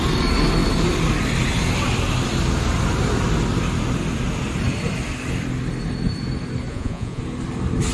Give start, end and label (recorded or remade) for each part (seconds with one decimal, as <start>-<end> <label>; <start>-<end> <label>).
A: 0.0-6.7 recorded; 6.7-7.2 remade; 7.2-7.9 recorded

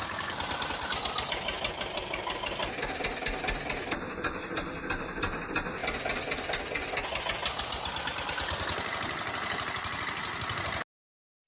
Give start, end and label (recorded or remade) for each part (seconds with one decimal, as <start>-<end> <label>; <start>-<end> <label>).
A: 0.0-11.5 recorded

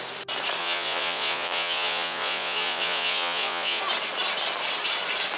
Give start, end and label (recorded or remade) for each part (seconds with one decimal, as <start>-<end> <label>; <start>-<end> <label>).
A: 0.0-0.6 recorded; 0.6-3.8 remade; 3.8-5.4 recorded

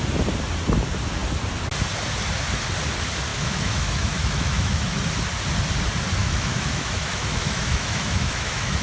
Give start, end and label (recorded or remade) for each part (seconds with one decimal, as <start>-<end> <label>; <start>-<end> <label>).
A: 0.0-3.3 recorded; 3.3-5.1 remade; 5.1-6.2 recorded; 6.2-8.8 remade

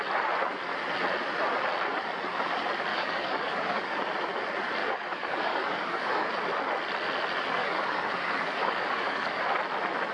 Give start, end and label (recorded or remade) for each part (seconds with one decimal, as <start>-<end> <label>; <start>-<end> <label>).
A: 0.0-2.9 recorded; 2.9-4.0 remade; 4.0-4.8 recorded; 4.8-6.3 remade; 6.3-7.6 recorded; 7.6-9.4 remade; 9.4-10.1 recorded

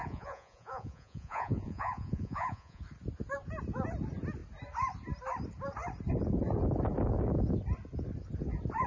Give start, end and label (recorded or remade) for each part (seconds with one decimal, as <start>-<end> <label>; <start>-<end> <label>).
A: 0.0-2.8 remade; 2.8-8.9 recorded